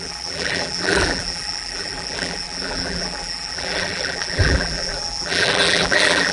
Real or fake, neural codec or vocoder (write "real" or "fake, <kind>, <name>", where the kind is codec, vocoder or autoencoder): fake, vocoder, BigVGAN v2